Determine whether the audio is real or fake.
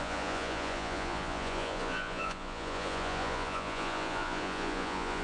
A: fake